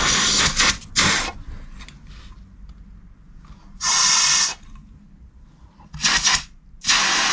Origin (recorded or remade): recorded